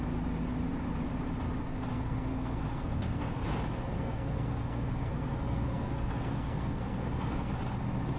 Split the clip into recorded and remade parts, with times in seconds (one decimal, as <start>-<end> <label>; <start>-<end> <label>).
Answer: 0.0-1.9 recorded; 1.9-3.4 remade; 3.4-3.9 recorded; 3.9-7.6 remade; 7.6-8.2 recorded